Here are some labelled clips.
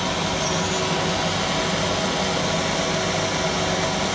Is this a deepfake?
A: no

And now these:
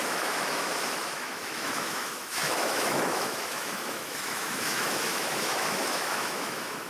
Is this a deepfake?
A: yes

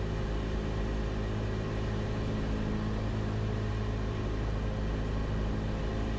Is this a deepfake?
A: no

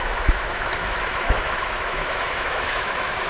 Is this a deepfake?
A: yes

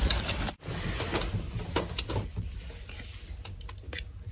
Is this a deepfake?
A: no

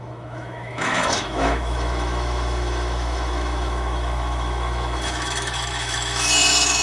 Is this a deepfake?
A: yes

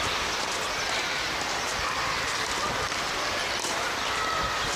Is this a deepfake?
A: no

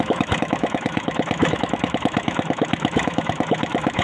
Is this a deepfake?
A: yes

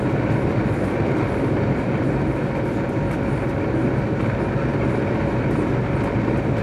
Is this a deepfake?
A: no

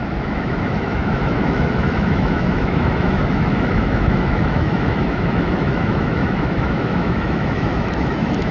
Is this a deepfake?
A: yes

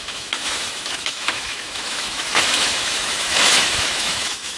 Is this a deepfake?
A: yes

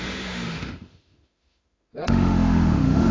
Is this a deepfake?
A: yes